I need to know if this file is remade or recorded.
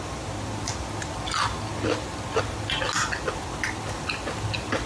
recorded